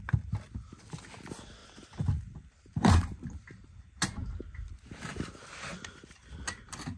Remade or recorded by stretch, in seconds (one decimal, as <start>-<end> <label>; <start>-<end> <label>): 0.0-7.0 recorded